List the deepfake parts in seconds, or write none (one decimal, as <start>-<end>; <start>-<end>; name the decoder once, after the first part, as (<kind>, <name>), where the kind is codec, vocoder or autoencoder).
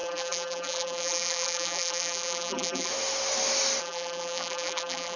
0.0-2.9 (vocoder, BigVGAN v2); 3.8-5.2